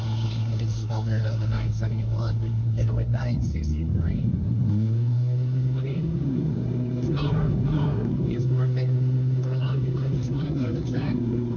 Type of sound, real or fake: fake